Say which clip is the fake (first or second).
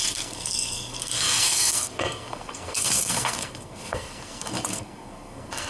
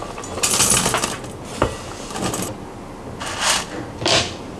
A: first